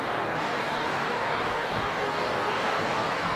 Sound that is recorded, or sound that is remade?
remade